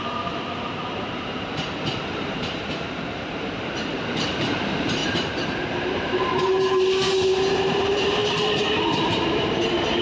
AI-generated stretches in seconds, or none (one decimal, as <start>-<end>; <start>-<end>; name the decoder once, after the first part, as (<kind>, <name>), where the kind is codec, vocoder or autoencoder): 0.0-5.0 (vocoder, BigVGAN v2); 5.8-8.2; 8.8-10.0